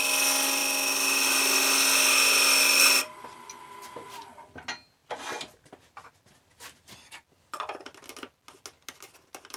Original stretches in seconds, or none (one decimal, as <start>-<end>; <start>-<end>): 0.0-9.6